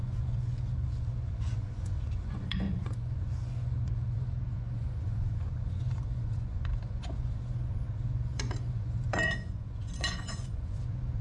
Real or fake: fake